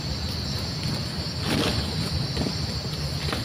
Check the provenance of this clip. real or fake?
real